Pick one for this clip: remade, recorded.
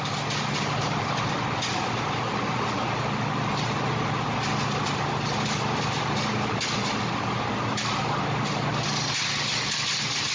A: recorded